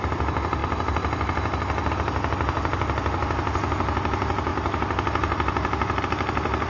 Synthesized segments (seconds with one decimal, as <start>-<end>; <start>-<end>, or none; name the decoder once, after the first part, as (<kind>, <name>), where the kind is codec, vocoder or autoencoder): none